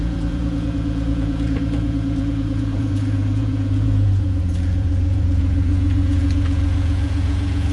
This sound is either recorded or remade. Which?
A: remade